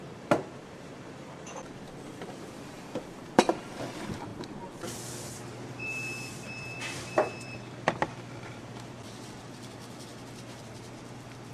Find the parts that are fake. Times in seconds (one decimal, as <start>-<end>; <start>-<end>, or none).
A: 0.0-10.1; 10.6-11.5